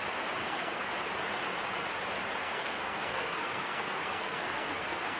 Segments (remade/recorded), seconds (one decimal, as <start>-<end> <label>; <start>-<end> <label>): 0.0-0.4 recorded; 0.4-0.9 remade; 0.9-2.4 recorded; 2.4-5.2 remade